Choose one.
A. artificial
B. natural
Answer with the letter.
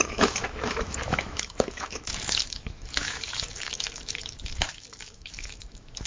A